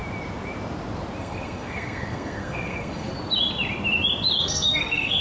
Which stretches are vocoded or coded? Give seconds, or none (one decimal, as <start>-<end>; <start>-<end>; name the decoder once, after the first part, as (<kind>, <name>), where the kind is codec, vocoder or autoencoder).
1.2-3.1 (codec, SNAC); 4.4-5.2